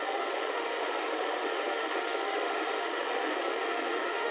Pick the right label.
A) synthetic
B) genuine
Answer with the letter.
A